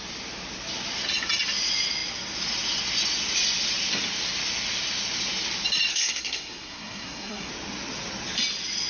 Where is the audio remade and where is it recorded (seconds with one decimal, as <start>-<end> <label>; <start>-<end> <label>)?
0.0-5.9 recorded; 5.9-7.5 remade; 7.5-8.9 recorded